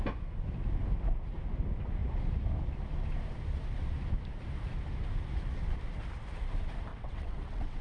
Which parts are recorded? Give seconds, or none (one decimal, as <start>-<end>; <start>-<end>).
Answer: 0.0-6.9

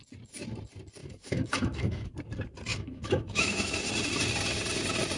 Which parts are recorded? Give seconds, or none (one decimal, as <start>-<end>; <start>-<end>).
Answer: 0.0-1.0; 2.1-2.7; 3.8-5.2